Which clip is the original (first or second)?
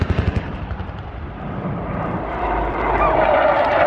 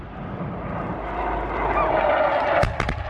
second